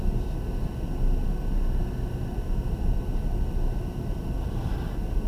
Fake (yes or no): no